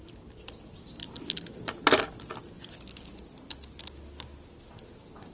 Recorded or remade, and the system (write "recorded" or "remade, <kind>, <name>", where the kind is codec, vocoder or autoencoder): recorded